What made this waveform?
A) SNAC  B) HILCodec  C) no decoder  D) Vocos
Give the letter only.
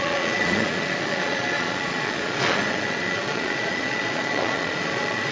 D